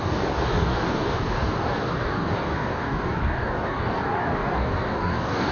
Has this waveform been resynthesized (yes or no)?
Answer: yes